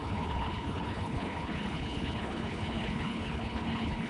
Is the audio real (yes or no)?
no